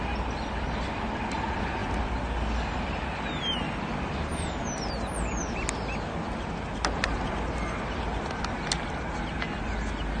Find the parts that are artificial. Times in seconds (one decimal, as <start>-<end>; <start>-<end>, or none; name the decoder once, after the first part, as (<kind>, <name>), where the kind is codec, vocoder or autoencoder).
none